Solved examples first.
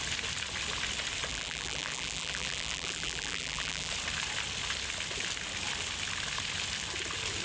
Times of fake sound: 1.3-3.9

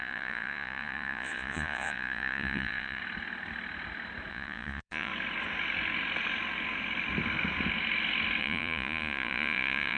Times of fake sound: 0.0-3.0; 4.3-5.1; 8.4-10.0

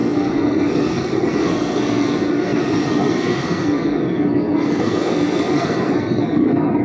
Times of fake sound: 0.0-6.8

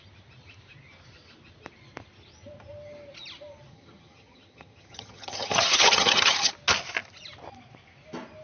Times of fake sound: 3.7-6.5